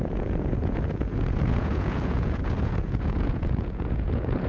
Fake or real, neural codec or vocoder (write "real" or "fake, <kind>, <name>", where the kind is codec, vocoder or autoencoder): fake, vocoder, Vocos